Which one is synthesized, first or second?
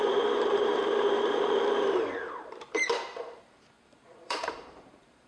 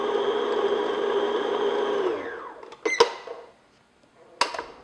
first